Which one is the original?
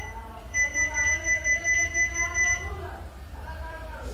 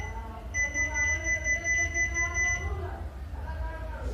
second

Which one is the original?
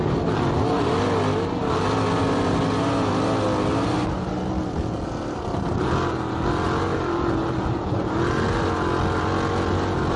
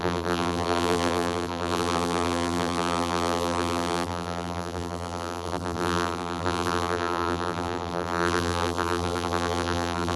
first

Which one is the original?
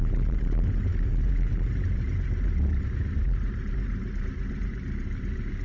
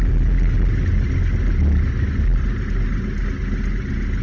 second